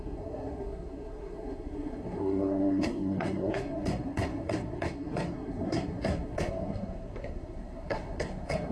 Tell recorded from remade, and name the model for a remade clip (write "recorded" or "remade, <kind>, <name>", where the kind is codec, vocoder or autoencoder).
remade, codec, SNAC